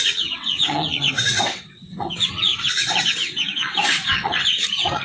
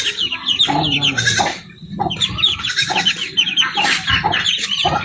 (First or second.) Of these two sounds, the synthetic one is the first